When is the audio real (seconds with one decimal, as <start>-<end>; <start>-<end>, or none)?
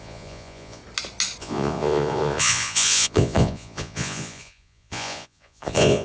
0.8-1.4